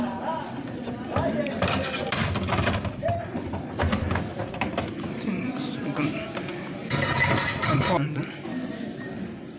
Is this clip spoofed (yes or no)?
yes